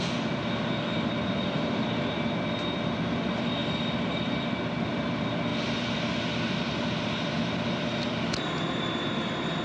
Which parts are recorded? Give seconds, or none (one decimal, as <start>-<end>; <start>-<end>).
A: 0.0-3.6; 4.3-9.6